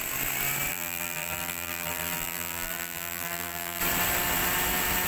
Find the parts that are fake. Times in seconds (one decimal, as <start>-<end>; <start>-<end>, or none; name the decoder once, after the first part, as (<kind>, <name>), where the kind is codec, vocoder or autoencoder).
0.7-3.8 (vocoder, BigVGAN v2)